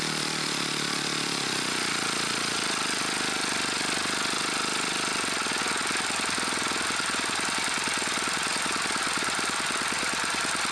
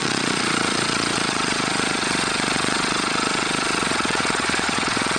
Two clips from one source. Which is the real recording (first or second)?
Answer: first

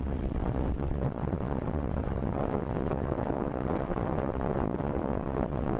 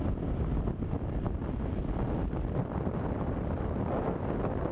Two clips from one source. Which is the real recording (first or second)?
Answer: second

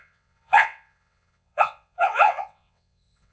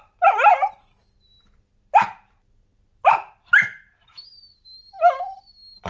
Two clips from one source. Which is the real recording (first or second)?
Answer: second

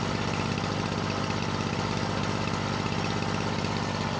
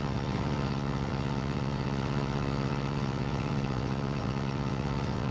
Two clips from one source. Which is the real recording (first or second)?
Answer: first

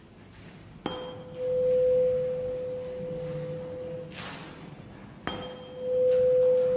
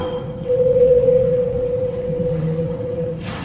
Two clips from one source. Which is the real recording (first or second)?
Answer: first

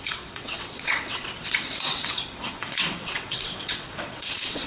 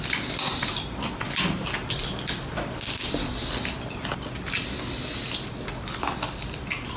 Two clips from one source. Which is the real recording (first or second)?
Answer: second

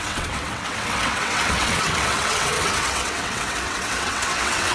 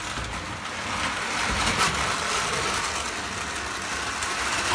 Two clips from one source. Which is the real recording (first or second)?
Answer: second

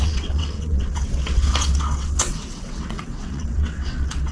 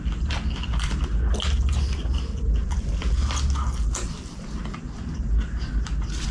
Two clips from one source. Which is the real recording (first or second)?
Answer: second